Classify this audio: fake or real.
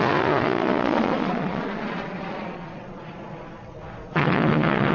fake